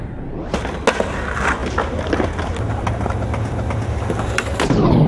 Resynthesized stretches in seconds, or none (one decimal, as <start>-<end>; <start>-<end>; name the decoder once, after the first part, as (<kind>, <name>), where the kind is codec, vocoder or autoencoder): none